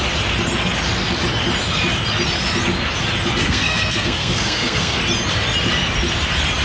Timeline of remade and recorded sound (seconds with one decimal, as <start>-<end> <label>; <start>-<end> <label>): 0.0-3.4 recorded; 3.4-5.0 remade; 5.0-6.6 recorded